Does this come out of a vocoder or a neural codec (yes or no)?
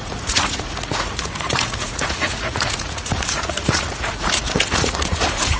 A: yes